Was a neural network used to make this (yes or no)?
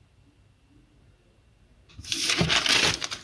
no